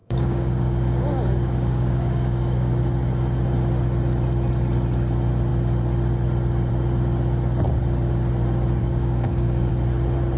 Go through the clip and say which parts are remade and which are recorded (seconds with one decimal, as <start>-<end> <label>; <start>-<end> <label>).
0.0-2.8 remade; 2.8-8.8 recorded; 8.8-9.7 remade; 9.7-10.4 recorded